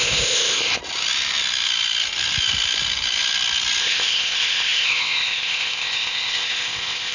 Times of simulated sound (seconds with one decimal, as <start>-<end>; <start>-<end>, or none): 0.0-0.8; 3.8-7.1